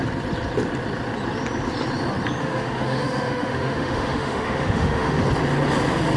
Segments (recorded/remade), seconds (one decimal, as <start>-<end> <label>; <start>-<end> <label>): 0.0-2.4 recorded; 2.4-5.2 remade; 5.2-6.2 recorded